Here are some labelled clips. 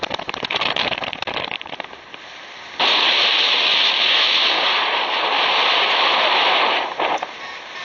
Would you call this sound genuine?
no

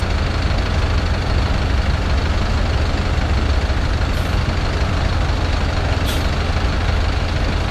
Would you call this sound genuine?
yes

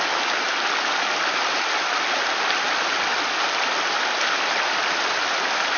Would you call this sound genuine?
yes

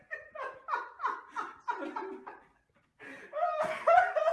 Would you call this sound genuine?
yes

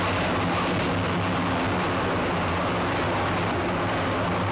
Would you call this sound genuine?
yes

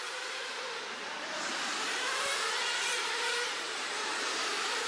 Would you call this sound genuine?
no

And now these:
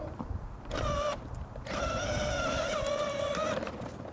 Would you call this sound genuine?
no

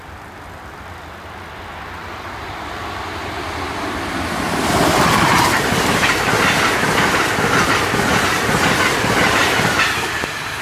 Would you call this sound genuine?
yes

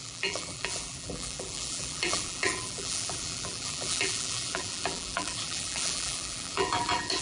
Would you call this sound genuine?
no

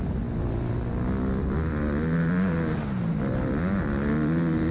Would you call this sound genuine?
yes